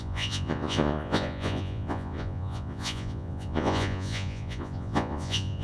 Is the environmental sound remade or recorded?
remade